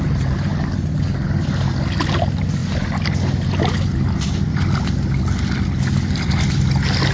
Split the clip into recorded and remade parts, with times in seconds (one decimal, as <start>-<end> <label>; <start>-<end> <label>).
0.0-7.1 recorded